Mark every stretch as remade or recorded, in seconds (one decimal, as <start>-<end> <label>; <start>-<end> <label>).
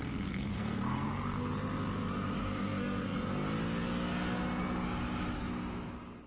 0.0-1.5 remade; 1.5-2.4 recorded; 2.4-3.2 remade; 3.2-6.3 recorded